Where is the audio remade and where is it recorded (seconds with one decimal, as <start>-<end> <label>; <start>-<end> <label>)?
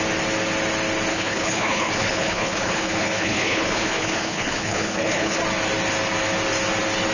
0.0-1.1 recorded; 1.1-5.4 remade; 5.4-7.1 recorded